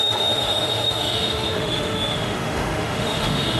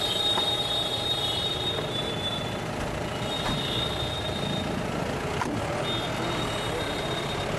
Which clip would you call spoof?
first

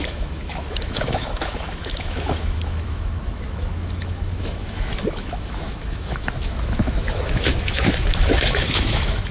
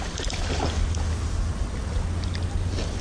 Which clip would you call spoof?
first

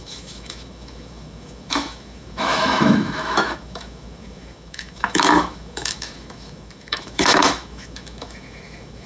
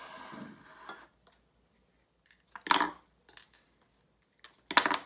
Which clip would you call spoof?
first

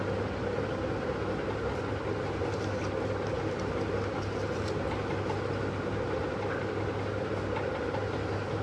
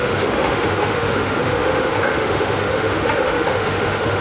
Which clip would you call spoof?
second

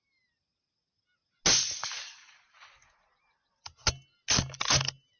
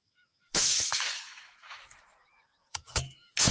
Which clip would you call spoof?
second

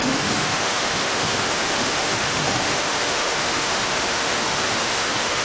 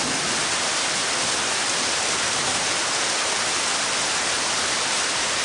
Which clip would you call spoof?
first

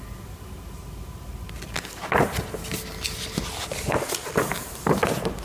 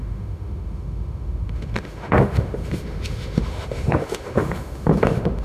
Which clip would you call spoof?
second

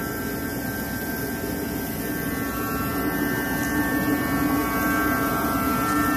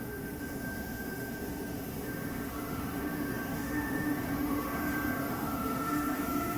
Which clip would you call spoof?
second